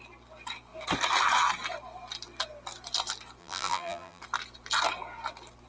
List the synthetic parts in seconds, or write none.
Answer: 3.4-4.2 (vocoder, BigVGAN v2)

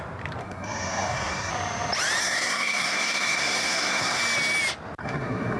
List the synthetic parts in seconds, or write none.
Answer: 0.4-1.5 (codec, SNAC); 2.2-4.2; 5.0-5.6

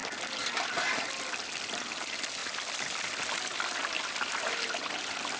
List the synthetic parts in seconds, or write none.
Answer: 3.8-5.4 (vocoder, BigVGAN v2)

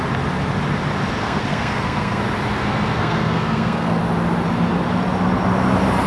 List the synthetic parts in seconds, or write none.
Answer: 1.2-2.2 (codec, SNAC); 2.6-4.0

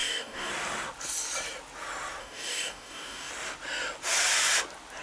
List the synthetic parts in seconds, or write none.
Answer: 0.0-0.5 (codec, DAC); 2.2-3.3